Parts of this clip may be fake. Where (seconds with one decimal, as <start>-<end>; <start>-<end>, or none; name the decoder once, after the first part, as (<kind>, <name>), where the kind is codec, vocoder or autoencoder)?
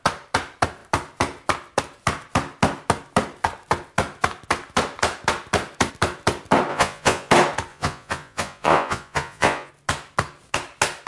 6.7-7.3 (vocoder, Vocos); 7.7-9.7